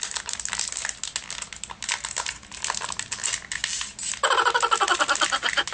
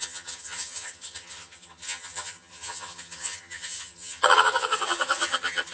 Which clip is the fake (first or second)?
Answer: second